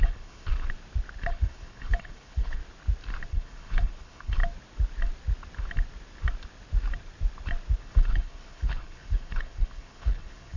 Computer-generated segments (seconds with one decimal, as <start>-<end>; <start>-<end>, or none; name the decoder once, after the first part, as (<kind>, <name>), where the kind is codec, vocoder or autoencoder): 0.0-0.5 (codec, HILCodec); 1.3-2.6; 3.3-4.4; 7.8-10.6